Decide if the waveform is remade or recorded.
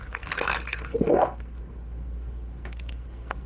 remade